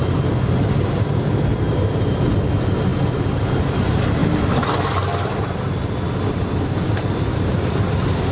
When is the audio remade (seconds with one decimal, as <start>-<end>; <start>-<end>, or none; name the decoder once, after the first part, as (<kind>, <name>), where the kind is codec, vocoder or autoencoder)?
0.0-4.2 (vocoder, BigVGAN v2); 6.9-8.3